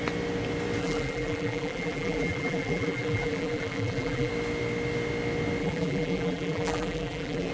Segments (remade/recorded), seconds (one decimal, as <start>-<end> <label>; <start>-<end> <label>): 0.0-0.8 recorded; 0.8-4.3 remade; 4.3-5.6 recorded; 5.6-7.5 remade